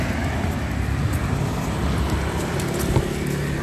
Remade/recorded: recorded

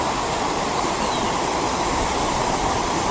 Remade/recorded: remade